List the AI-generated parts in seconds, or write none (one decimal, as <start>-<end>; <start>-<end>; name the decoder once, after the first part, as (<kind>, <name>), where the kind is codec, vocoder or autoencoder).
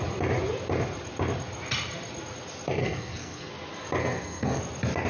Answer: 2.8-3.5 (codec, SNAC); 4.0-4.6